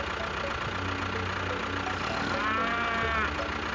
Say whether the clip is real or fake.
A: real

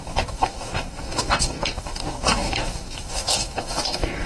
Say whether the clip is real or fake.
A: fake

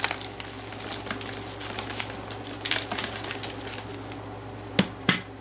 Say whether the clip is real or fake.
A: real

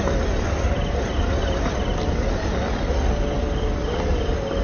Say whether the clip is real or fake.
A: real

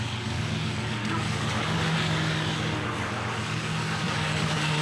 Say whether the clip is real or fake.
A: fake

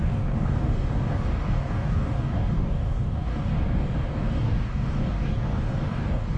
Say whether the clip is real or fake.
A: fake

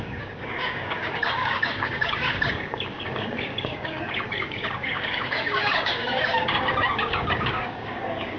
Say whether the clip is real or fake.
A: fake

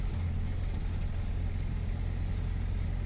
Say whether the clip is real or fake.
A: real